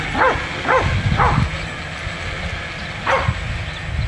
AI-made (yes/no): no